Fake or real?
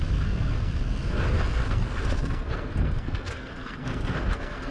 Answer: fake